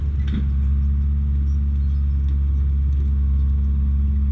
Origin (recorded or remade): recorded